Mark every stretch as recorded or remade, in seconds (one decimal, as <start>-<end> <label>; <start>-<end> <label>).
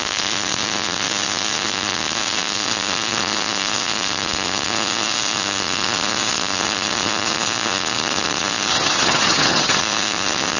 0.0-8.7 recorded; 8.7-9.8 remade; 9.8-10.6 recorded